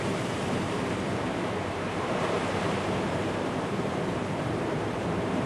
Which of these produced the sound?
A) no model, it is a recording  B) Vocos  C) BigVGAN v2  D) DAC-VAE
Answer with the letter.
C